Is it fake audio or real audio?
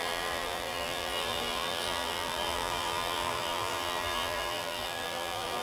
fake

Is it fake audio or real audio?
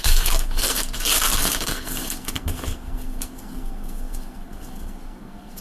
fake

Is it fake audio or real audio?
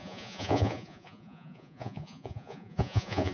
fake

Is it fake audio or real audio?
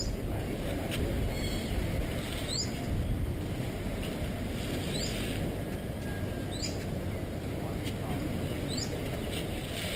real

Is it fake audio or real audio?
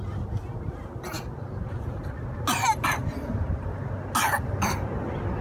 real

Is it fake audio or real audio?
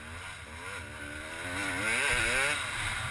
real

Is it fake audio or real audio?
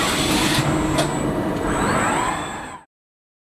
real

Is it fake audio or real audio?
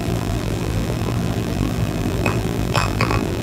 fake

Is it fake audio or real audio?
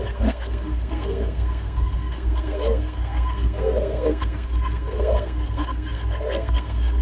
fake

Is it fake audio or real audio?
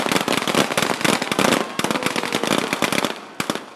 real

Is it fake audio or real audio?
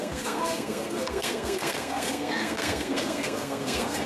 fake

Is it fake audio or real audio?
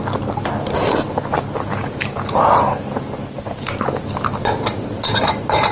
real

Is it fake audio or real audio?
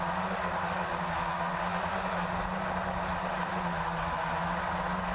real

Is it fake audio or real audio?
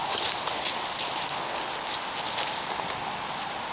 real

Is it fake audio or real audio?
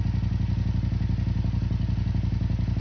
real